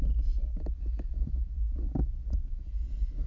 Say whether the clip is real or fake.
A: real